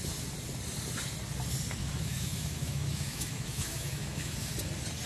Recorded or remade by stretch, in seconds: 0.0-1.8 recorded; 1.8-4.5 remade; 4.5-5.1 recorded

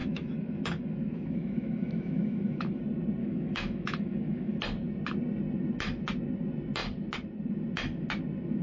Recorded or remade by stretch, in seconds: 0.0-2.8 remade; 2.8-3.2 recorded; 3.2-4.6 remade; 4.6-8.6 recorded

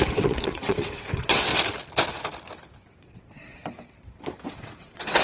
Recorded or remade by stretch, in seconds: 0.0-1.5 remade; 1.5-3.0 recorded; 3.0-3.6 remade; 3.6-4.5 recorded; 4.5-5.2 remade

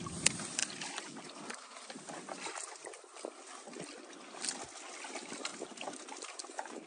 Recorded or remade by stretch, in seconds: 0.0-5.5 recorded; 5.5-6.9 remade

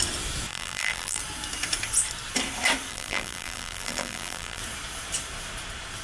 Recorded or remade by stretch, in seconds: 0.0-0.5 recorded; 0.5-1.2 remade; 1.2-2.9 recorded; 2.9-4.6 remade; 4.6-6.0 recorded

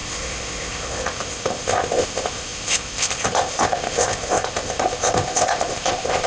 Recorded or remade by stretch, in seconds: 0.0-6.3 remade

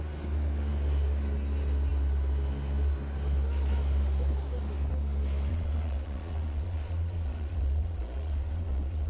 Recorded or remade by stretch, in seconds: 0.0-5.5 recorded; 5.5-9.1 remade